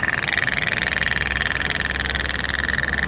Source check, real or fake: real